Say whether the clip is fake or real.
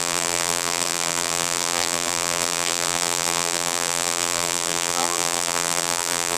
fake